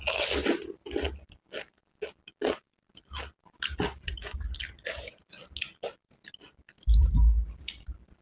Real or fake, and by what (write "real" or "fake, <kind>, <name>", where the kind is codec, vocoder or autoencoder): real